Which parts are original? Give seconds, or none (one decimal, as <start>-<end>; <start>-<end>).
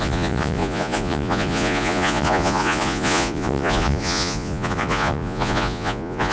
none